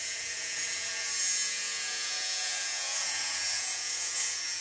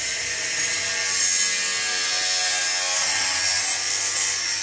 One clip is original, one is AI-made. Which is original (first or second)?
second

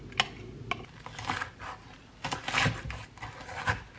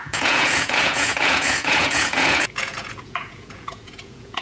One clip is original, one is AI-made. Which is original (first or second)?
first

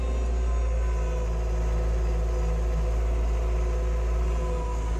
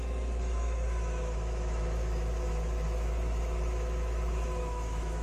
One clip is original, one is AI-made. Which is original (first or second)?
first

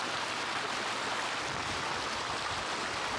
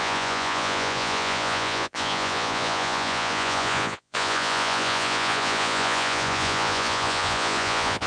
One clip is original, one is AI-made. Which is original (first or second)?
first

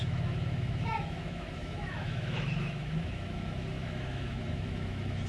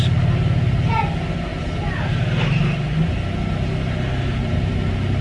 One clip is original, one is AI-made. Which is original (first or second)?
second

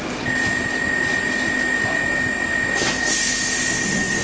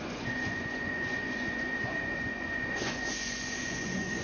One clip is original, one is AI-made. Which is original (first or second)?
first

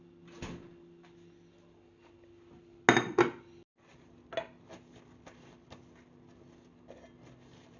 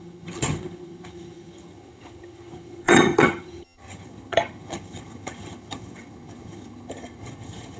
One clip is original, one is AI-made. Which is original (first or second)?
first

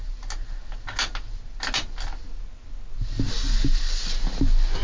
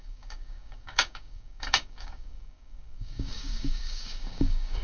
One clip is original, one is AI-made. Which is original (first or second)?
first